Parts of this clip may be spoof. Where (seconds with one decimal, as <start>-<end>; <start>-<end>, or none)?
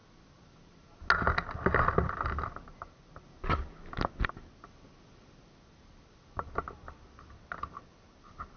none